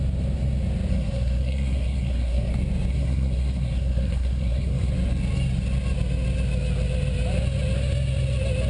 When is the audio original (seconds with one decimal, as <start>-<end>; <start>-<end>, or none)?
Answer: 0.0-0.9; 2.5-2.9; 4.9-8.7